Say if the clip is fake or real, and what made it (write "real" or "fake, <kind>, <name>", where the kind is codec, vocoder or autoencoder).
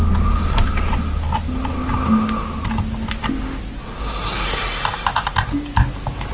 real